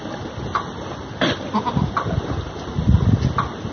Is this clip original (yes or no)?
yes